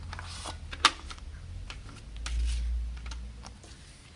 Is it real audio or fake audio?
real